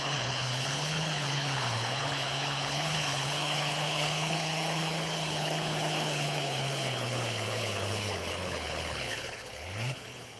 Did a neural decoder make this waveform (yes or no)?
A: yes